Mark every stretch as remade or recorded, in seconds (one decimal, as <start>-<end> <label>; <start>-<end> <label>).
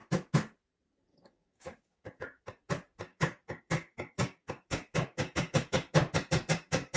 0.0-1.1 recorded; 1.1-2.4 remade; 2.4-3.1 recorded; 3.1-5.9 remade; 5.9-7.0 recorded